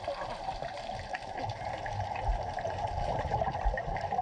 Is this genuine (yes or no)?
yes